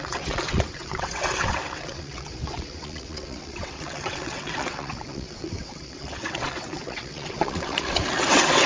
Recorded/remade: remade